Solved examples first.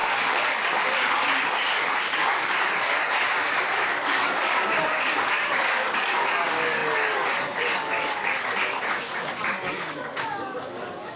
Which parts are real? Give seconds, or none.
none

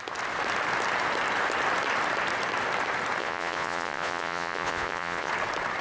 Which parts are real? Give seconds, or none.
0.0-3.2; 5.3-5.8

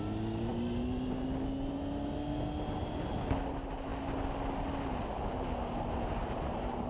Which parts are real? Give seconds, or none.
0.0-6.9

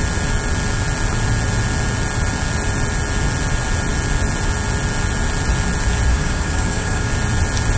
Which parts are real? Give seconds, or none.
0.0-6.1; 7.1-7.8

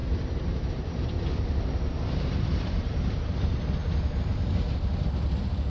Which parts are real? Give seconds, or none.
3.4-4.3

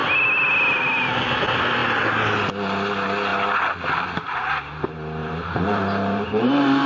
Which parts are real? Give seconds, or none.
0.0-5.2

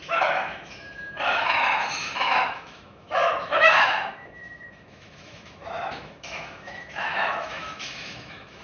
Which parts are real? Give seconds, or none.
none

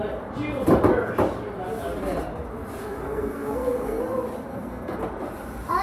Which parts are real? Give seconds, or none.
0.0-2.8; 4.0-4.5; 5.0-5.8